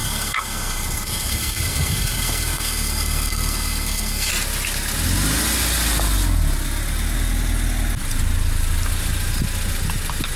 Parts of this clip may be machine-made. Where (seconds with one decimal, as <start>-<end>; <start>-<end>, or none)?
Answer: 0.0-4.3